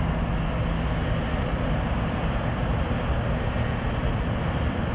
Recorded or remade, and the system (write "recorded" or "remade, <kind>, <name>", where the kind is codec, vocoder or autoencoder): recorded